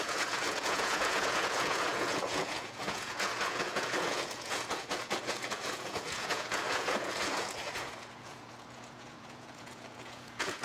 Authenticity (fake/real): fake